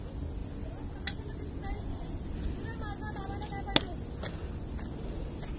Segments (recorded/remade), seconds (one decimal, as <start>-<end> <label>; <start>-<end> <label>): 0.0-5.6 recorded